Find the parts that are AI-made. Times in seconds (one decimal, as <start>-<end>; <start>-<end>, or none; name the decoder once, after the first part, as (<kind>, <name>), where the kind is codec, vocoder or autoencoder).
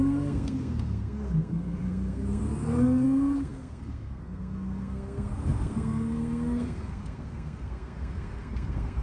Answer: 0.0-9.0 (codec, SNAC)